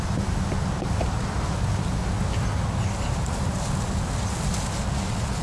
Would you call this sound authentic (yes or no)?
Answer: yes